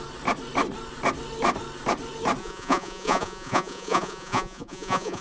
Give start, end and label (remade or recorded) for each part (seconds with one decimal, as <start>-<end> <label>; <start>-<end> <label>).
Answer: 0.0-2.4 recorded; 2.4-5.2 remade